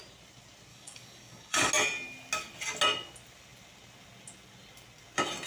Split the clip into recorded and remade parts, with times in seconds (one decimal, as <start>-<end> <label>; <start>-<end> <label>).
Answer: 0.0-0.7 recorded; 0.7-1.7 remade; 1.7-5.5 recorded